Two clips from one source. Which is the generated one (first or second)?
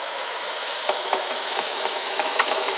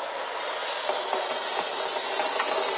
first